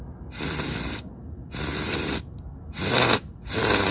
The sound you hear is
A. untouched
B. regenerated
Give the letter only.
A